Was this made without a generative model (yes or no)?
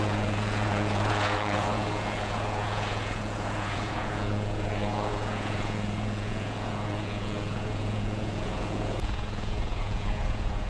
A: no